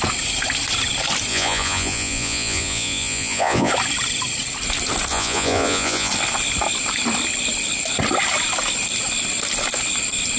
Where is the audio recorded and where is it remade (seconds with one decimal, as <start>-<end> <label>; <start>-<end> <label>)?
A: 0.0-1.3 recorded; 1.3-3.7 remade; 3.7-5.1 recorded; 5.1-6.1 remade; 6.1-10.4 recorded